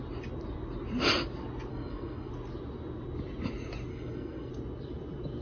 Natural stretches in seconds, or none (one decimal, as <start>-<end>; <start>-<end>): 0.0-1.7; 2.3-3.9; 4.5-5.4